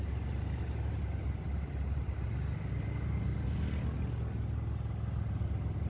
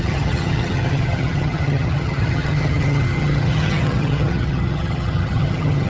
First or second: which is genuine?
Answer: first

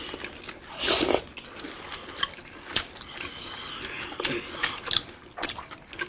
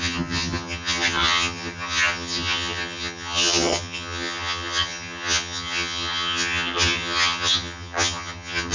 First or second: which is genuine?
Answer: first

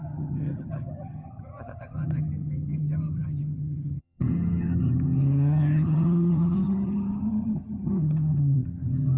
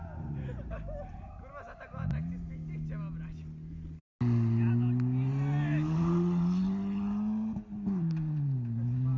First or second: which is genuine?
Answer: second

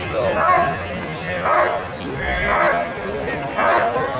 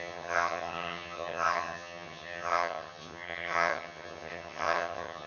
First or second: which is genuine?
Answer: first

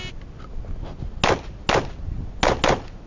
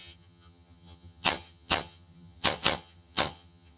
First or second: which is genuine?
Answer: first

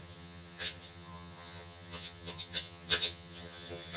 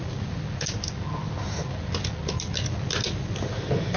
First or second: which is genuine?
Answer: second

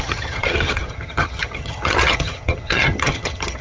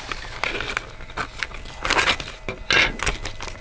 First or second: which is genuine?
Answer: second